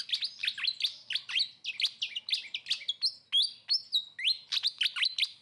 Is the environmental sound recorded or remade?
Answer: recorded